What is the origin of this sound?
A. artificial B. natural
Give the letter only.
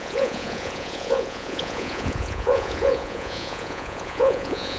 A